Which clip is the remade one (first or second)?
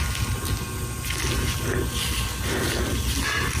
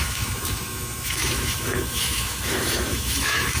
second